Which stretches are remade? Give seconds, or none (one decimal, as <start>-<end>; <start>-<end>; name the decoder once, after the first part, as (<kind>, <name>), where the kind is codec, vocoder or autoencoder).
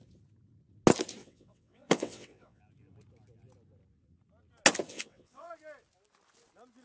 1.2-2.6 (vocoder, WaveNeXt); 4.9-5.5